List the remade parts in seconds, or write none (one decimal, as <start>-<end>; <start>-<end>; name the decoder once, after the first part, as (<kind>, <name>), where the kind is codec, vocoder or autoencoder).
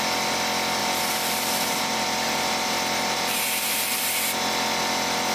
0.8-4.0 (vocoder, BigVGAN v2)